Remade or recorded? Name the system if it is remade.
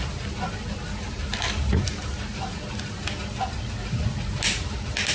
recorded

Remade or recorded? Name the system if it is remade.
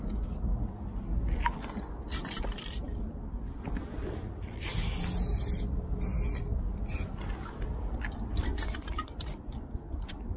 recorded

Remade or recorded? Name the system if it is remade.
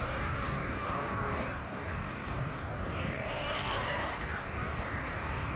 remade, codec, DAC